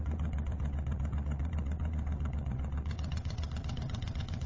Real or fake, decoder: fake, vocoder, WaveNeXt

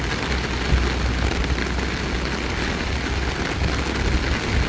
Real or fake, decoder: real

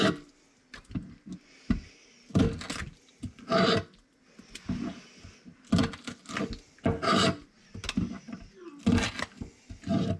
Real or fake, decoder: real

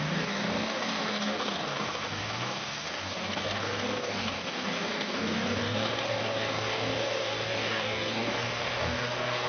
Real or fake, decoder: fake, codec, DAC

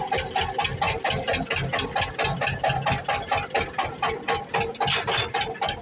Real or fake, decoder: real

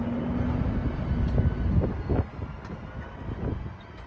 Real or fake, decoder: real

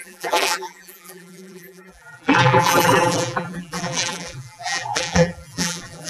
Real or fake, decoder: fake, vocoder, BigVGAN v2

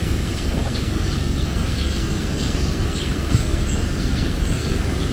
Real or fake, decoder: fake, codec, SNAC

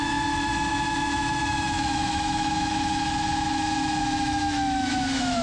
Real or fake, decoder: fake, autoencoder, DAC-VAE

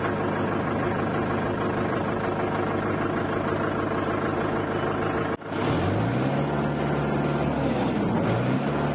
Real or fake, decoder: real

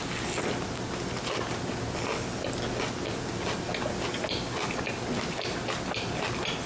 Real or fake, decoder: real